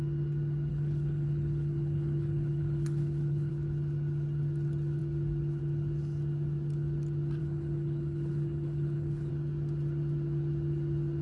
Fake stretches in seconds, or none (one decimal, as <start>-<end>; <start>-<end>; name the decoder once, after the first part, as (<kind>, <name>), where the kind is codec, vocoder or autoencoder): 0.7-3.5 (codec, HILCodec); 7.4-9.3